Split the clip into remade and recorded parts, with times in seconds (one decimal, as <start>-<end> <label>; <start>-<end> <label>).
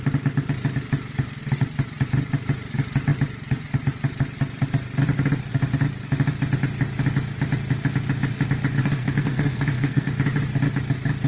0.0-8.8 recorded; 8.8-10.1 remade; 10.1-11.3 recorded